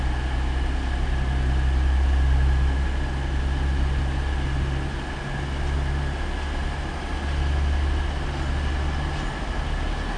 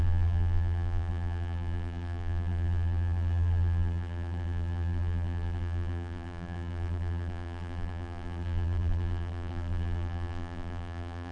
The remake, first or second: second